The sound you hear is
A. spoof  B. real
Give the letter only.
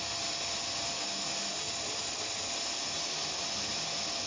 B